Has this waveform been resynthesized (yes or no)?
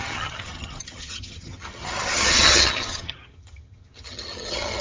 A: yes